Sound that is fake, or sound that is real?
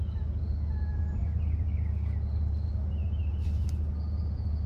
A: real